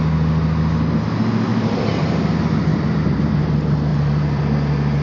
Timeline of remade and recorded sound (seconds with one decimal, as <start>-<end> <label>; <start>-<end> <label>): 0.0-1.5 recorded; 1.5-2.3 remade; 2.3-2.7 recorded; 2.7-3.2 remade; 3.2-3.9 recorded; 3.9-4.4 remade; 4.4-5.0 recorded